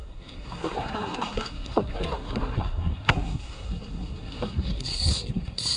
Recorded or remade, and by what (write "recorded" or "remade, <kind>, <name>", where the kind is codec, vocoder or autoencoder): remade, codec, SNAC